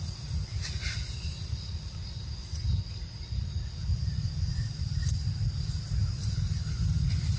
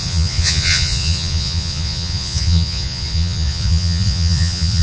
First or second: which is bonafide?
first